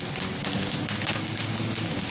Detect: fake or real real